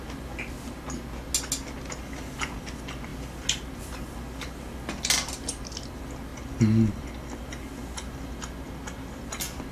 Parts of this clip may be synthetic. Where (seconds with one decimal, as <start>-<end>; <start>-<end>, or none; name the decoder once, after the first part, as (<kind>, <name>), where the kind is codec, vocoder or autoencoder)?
none